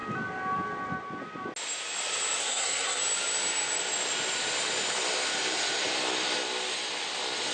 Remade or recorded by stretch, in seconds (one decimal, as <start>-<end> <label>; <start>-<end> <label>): 0.0-2.4 recorded; 2.4-3.0 remade; 3.0-7.5 recorded

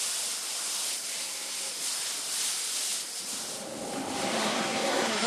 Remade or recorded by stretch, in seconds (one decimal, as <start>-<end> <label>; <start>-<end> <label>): 0.0-1.2 recorded; 1.2-1.7 remade; 1.7-4.4 recorded; 4.4-5.3 remade

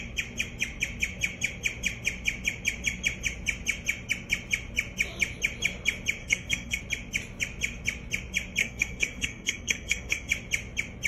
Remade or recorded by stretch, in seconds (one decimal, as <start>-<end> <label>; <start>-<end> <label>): 0.0-6.2 recorded; 6.2-6.8 remade; 6.8-8.6 recorded; 8.6-10.3 remade; 10.3-11.1 recorded

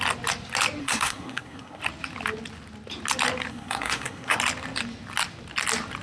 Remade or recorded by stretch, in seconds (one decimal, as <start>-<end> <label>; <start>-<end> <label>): 0.0-0.8 recorded; 0.8-1.8 remade; 1.8-3.5 recorded; 3.5-4.4 remade; 4.4-6.0 recorded

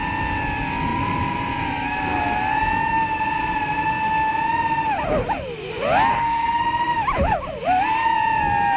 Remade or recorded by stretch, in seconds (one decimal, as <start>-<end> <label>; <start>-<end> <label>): 0.0-6.1 recorded; 6.1-6.6 remade; 6.6-8.8 recorded

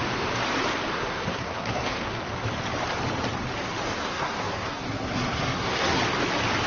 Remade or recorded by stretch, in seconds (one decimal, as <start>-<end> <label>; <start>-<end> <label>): 0.0-0.9 recorded; 0.9-2.2 remade; 2.2-4.0 recorded; 4.0-6.0 remade; 6.0-6.7 recorded

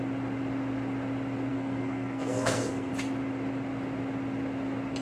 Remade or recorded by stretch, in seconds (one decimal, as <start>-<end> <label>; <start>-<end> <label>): 0.0-1.5 recorded; 1.5-2.9 remade; 2.9-5.0 recorded